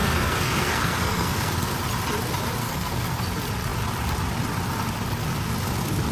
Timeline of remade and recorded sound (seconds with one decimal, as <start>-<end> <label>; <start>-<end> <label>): 0.0-1.7 remade; 1.7-2.6 recorded; 2.6-3.2 remade; 3.2-6.1 recorded